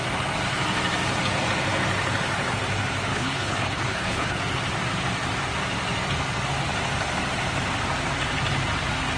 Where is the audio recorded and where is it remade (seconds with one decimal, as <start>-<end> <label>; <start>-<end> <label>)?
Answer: 0.0-3.1 recorded; 3.1-4.4 remade; 4.4-9.2 recorded